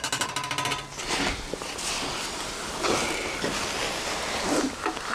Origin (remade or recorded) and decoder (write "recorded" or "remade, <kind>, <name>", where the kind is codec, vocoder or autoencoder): recorded